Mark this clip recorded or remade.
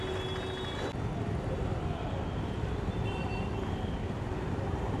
recorded